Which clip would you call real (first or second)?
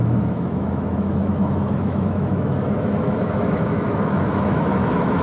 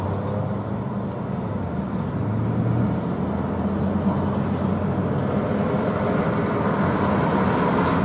second